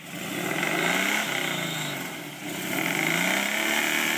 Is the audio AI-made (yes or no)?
no